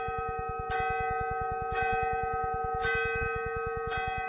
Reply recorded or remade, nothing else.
recorded